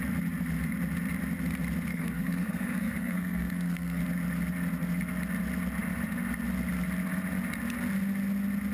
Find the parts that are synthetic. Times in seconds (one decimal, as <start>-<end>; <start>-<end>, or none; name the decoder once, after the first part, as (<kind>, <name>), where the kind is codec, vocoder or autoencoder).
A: 1.9-4.0 (codec, SNAC)